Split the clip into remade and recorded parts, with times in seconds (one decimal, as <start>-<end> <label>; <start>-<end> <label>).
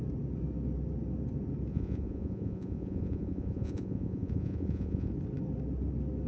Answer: 0.0-1.7 recorded; 1.7-5.1 remade; 5.1-6.3 recorded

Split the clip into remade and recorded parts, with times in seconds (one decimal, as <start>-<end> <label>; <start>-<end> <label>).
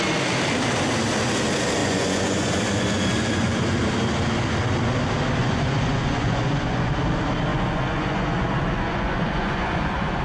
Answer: 0.0-1.8 recorded; 1.8-3.8 remade; 3.8-5.4 recorded; 5.4-6.9 remade; 6.9-7.5 recorded; 7.5-10.2 remade